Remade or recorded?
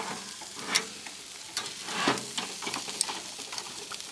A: recorded